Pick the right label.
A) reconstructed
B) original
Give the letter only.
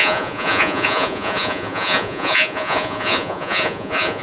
A